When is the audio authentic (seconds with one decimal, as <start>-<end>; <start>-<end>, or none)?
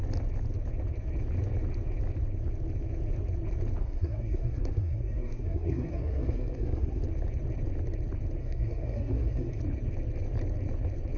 0.0-3.8; 7.0-8.4; 9.6-11.2